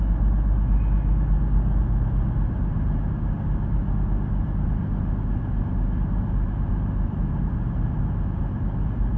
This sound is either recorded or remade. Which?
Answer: recorded